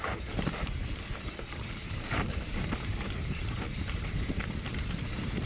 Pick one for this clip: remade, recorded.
remade